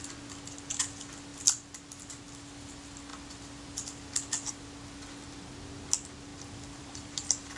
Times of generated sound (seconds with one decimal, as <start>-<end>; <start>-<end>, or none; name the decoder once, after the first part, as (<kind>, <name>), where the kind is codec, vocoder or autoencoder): 3.1-4.5 (vocoder, BigVGAN v2); 6.3-7.6